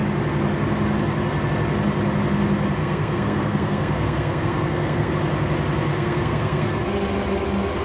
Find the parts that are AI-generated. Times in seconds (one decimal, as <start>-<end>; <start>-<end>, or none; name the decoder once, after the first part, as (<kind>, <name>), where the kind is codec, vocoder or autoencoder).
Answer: 2.8-5.1 (codec, SNAC); 5.9-6.8